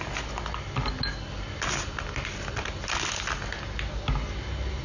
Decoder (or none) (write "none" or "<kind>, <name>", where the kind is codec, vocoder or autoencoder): none